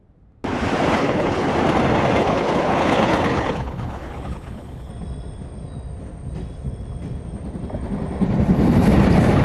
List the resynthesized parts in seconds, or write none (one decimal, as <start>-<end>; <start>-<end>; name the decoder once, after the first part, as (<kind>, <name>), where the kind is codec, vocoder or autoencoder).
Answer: 0.9-1.5 (codec, HILCodec); 2.2-4.9